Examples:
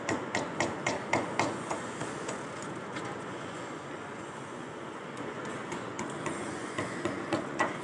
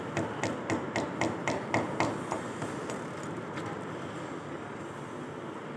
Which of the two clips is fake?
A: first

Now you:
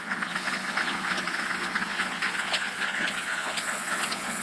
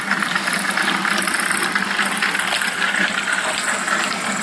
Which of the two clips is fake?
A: first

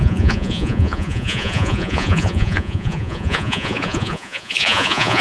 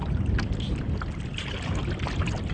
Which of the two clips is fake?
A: first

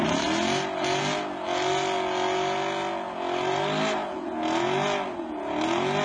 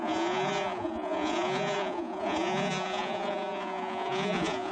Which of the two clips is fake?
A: second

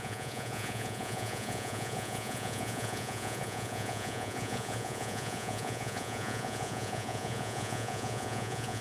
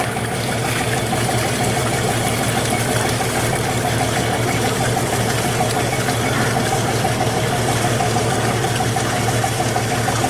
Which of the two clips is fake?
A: first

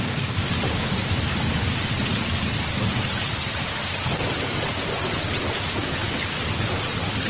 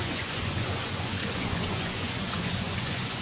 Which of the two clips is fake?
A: second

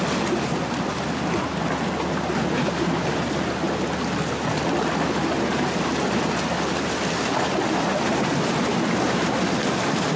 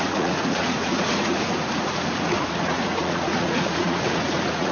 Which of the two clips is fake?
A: second